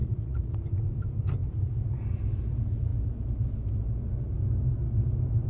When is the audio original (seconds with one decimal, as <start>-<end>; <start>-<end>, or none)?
0.5-5.5